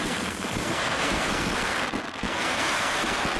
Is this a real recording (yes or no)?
no